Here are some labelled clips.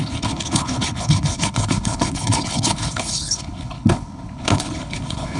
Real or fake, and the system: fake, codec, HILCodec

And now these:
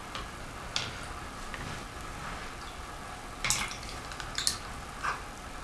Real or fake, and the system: real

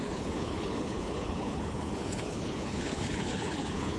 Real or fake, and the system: fake, codec, HILCodec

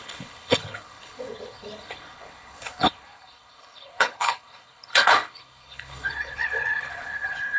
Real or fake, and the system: fake, codec, HILCodec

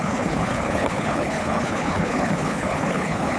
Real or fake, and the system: fake, codec, HILCodec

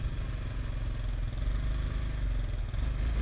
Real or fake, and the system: real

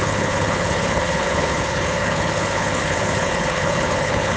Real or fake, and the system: fake, codec, HILCodec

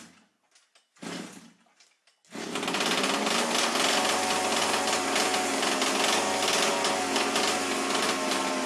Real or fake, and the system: real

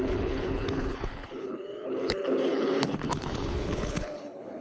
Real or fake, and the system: fake, codec, HILCodec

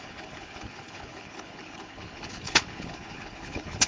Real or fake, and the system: fake, codec, HILCodec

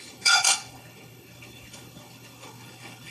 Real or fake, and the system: fake, codec, HILCodec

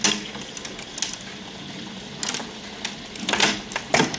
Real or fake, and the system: real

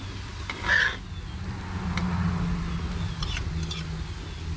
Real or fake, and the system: real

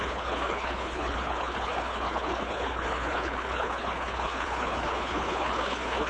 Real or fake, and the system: fake, codec, HILCodec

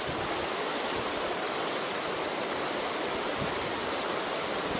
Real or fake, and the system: real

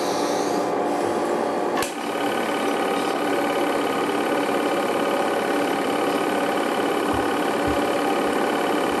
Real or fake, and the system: real